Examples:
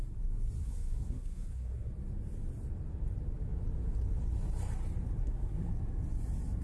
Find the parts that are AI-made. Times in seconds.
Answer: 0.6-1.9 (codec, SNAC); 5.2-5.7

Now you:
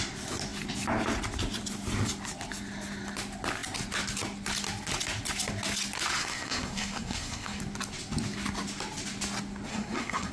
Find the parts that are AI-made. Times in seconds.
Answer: 6.2-7.6 (codec, SNAC); 9.7-10.3

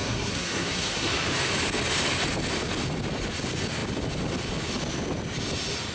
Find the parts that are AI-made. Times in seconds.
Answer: 0.0-1.1 (codec, SNAC)

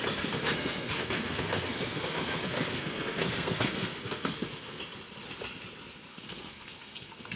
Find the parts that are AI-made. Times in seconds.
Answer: 0.4-4.8 (codec, SNAC); 6.1-7.4

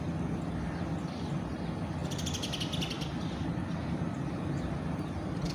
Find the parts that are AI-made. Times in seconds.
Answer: none

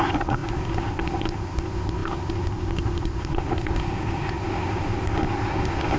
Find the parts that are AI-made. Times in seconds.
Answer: 0.0-6.0 (codec, SNAC)

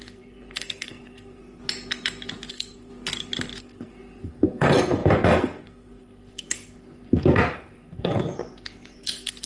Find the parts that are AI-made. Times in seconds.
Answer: 0.0-1.6 (codec, SNAC); 2.5-2.9; 3.6-9.5